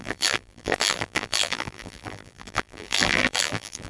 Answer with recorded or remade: remade